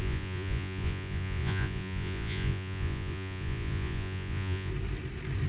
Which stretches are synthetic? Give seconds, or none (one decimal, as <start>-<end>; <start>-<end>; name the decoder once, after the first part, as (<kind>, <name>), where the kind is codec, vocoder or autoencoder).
0.0-4.7 (vocoder, Vocos)